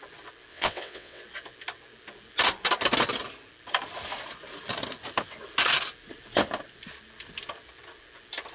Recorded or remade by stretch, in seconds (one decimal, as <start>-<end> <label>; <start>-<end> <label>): 0.0-0.5 recorded; 0.5-1.2 remade; 1.2-8.5 recorded